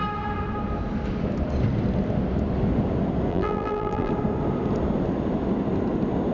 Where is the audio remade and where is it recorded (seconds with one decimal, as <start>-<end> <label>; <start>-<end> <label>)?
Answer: 0.0-3.3 recorded; 3.3-4.1 remade; 4.1-6.3 recorded